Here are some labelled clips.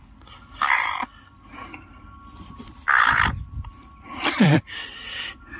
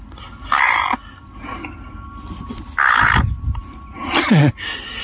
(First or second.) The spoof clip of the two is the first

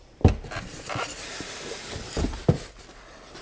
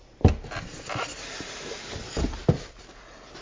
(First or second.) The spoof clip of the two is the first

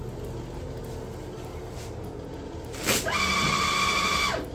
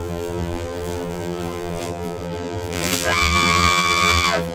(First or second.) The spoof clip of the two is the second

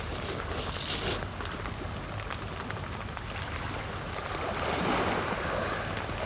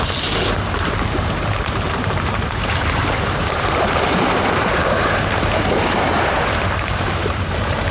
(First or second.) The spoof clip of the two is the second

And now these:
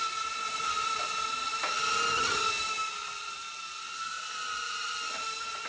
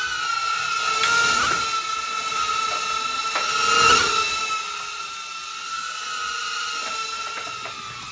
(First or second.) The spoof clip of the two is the first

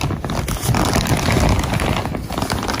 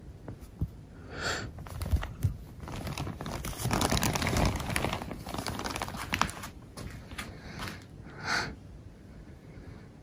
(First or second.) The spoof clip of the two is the second